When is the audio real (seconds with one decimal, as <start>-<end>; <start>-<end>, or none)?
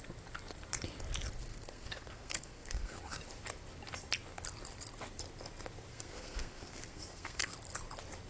0.0-1.5; 3.2-5.9; 7.5-8.3